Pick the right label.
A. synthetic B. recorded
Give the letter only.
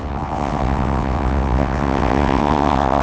A